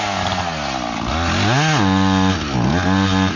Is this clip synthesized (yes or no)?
no